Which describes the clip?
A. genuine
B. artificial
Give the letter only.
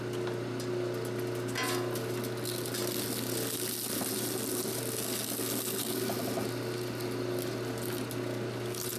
A